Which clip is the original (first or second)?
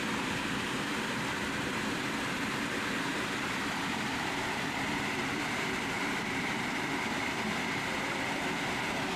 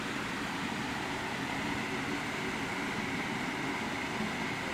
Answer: second